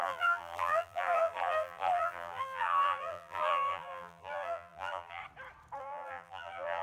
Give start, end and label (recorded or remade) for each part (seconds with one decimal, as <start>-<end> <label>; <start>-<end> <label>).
0.0-5.2 remade; 5.2-5.8 recorded; 5.8-6.8 remade

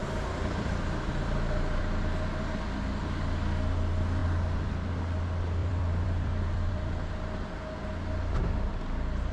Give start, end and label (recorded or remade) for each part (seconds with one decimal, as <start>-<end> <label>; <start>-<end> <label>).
0.0-1.8 remade; 1.8-4.2 recorded; 4.2-4.9 remade; 4.9-5.6 recorded; 5.6-7.1 remade; 7.1-9.3 recorded

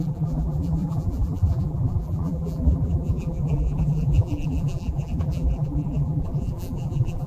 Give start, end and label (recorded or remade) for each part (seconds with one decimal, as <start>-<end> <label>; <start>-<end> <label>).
0.0-7.3 remade